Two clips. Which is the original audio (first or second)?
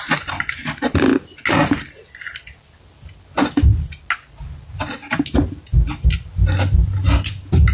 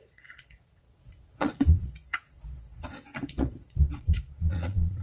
first